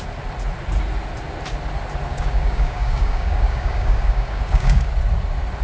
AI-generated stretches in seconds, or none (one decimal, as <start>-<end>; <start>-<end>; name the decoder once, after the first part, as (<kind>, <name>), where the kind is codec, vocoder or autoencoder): 2.1-4.9 (codec, DAC)